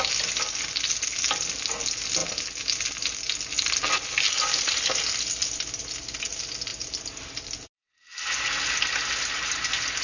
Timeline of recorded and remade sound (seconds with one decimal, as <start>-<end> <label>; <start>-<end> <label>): 0.0-10.0 recorded